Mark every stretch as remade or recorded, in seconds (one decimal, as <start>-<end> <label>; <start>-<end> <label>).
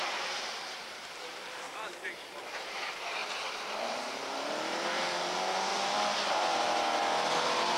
0.0-7.8 remade